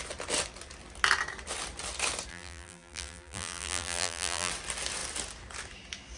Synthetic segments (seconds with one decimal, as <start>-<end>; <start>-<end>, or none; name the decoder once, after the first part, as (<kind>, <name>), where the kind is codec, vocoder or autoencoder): 2.3-4.5 (vocoder, BigVGAN v2)